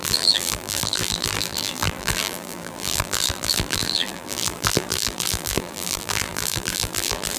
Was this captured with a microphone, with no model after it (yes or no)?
no